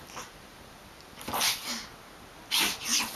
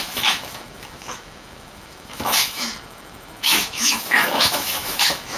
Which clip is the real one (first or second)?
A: first